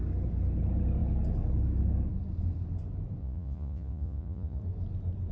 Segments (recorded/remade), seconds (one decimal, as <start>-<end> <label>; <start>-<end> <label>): 0.0-3.2 recorded; 3.2-4.6 remade; 4.6-5.3 recorded